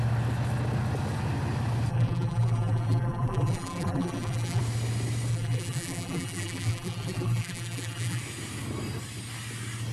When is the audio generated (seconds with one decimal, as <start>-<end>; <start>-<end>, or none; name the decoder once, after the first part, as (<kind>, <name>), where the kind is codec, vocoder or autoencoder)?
1.9-4.6 (vocoder, BigVGAN v2); 5.3-8.2